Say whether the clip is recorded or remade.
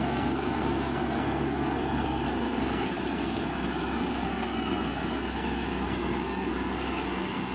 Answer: remade